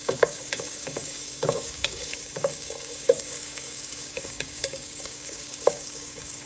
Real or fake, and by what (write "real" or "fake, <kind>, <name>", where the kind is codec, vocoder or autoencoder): fake, codec, DAC